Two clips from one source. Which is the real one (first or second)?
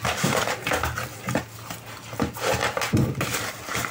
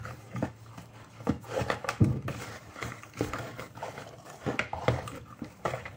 first